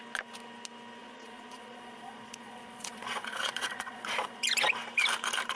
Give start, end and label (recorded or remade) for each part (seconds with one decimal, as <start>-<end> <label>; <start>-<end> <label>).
0.0-1.0 recorded; 1.0-4.4 remade; 4.4-5.6 recorded